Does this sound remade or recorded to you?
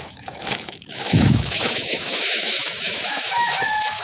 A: remade